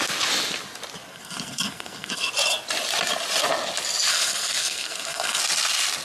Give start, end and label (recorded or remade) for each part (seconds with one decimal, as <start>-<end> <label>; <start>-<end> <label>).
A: 0.0-1.1 recorded; 1.1-2.3 remade; 2.3-4.1 recorded; 4.1-5.4 remade; 5.4-6.0 recorded